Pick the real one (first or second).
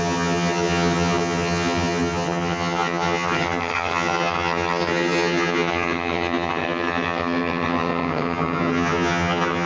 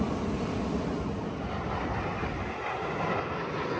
second